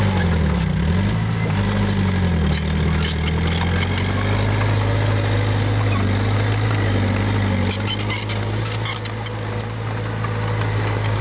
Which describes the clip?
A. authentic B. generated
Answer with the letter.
A